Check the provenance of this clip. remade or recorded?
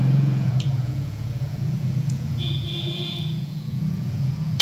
remade